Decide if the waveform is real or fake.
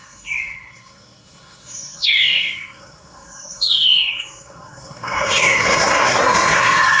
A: fake